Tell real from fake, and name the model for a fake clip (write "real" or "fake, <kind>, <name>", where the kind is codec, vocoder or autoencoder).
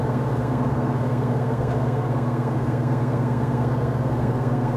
fake, codec, SNAC